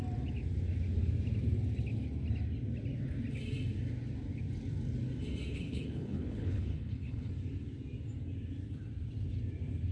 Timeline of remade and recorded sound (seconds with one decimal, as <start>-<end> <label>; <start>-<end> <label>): 0.0-5.5 recorded; 5.5-7.3 remade; 7.3-9.9 recorded